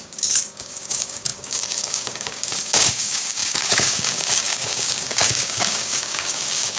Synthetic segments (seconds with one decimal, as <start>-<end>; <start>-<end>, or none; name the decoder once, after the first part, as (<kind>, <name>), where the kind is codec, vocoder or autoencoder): 0.0-6.8 (codec, DAC)